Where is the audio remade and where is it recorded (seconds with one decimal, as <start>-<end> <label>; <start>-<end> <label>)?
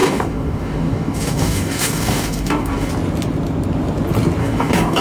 0.0-2.9 remade; 2.9-4.4 recorded; 4.4-5.0 remade